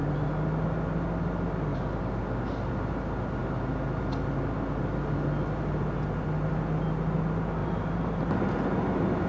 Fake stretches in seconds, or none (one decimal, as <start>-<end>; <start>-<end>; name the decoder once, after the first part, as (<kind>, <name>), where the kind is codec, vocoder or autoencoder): 7.6-8.3 (vocoder, BigVGAN v2)